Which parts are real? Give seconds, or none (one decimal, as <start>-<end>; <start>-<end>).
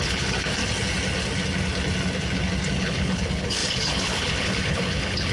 0.6-2.8